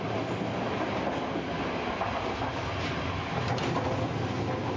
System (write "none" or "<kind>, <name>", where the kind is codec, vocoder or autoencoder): none